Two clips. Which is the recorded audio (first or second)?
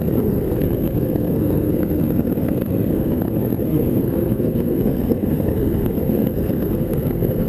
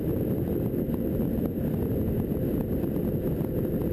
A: second